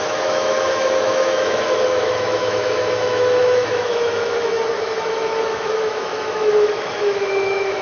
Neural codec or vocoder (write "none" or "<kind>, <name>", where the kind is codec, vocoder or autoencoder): autoencoder, DAC-VAE